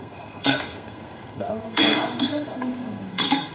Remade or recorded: remade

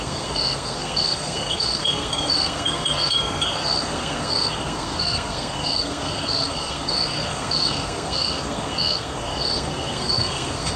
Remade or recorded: remade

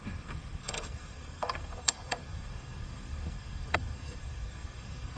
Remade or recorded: remade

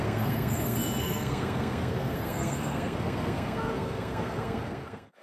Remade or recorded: remade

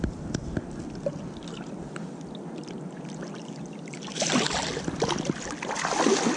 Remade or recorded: recorded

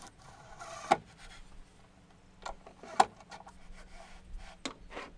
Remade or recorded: recorded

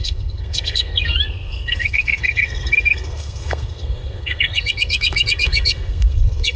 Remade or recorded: remade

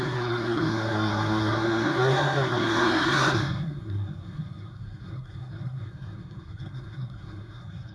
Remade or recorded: remade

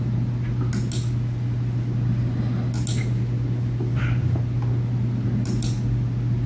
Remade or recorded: recorded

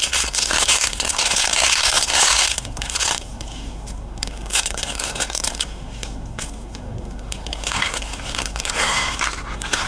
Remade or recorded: remade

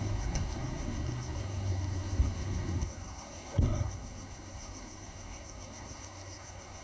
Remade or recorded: remade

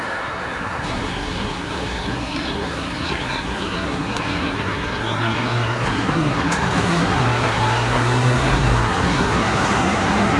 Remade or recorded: remade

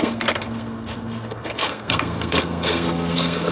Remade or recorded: remade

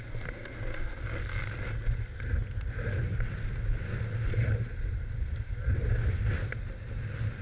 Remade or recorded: recorded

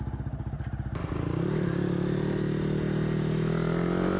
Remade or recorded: recorded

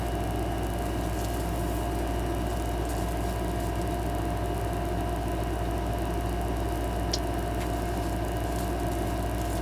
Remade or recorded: recorded